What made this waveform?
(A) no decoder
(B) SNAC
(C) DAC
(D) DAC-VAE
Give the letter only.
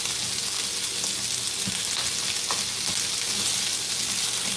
A